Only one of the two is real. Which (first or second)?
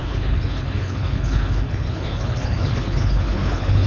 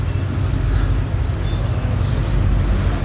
second